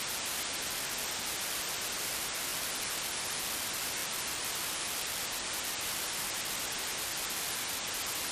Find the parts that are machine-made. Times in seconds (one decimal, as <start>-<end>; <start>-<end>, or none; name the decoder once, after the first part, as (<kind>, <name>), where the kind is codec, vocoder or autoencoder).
none